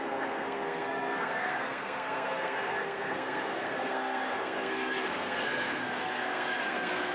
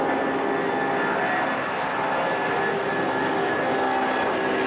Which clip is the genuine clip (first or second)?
second